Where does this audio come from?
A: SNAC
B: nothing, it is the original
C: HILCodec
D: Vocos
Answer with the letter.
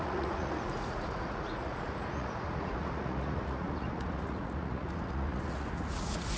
D